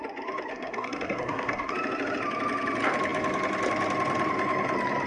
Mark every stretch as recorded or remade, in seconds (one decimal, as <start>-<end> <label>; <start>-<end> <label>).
0.0-0.5 recorded; 0.5-1.7 remade; 1.7-5.1 recorded